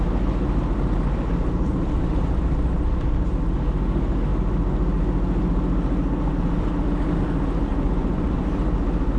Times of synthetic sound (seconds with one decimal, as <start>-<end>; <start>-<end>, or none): 7.7-8.2